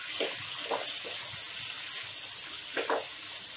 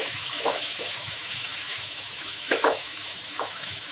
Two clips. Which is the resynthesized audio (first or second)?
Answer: second